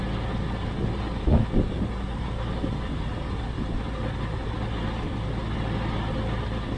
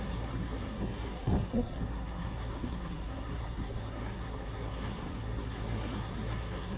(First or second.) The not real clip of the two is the second